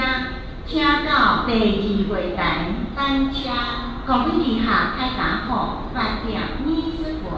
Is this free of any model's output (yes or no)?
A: yes